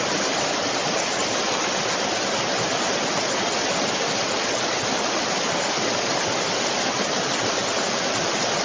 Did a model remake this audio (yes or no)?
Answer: no